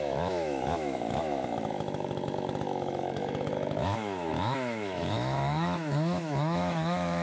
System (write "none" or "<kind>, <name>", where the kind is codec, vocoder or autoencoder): autoencoder, DAC-VAE